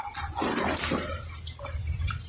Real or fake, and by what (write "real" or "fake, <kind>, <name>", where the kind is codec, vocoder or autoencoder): real